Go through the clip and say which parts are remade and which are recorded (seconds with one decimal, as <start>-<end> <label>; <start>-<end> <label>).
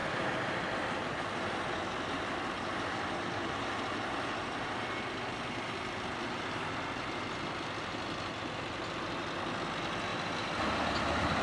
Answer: 0.0-11.4 recorded